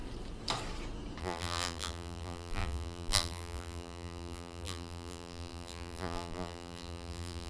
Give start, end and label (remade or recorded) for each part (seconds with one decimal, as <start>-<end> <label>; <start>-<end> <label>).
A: 0.0-1.2 recorded; 1.2-7.5 remade